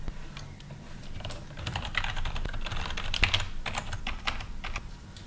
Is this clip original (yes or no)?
yes